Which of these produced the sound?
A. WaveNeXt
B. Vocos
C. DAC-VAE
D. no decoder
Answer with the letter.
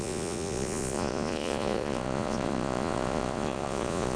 B